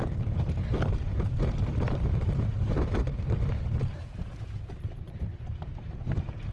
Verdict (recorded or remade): remade